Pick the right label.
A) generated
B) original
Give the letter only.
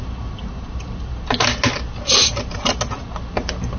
B